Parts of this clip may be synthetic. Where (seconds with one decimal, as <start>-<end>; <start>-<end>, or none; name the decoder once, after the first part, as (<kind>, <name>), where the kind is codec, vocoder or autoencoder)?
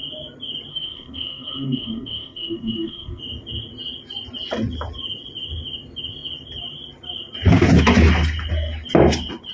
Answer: 0.7-3.2 (codec, SNAC)